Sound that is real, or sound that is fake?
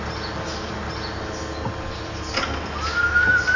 real